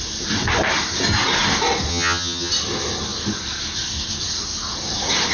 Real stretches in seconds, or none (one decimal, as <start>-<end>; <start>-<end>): 0.0-1.9; 2.5-5.3